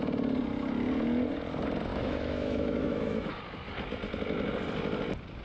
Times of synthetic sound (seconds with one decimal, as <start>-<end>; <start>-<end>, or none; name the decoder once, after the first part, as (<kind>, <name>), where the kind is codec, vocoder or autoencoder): 1.9-3.4 (autoencoder, DAC-VAE)

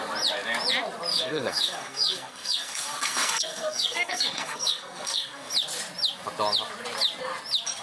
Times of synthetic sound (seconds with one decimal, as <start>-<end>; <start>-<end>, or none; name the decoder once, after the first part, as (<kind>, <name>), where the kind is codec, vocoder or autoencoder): 1.1-5.5 (codec, SNAC)

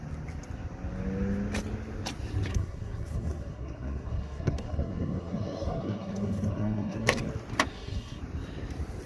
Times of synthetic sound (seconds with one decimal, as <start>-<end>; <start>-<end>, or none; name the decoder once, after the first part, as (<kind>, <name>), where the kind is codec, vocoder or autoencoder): 2.5-7.3 (codec, SNAC); 7.7-8.2